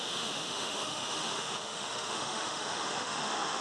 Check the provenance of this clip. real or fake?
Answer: fake